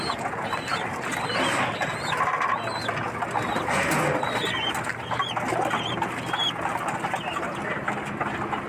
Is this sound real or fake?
real